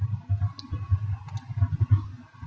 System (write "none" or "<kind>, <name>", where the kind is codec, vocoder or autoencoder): none